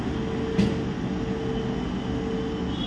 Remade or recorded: recorded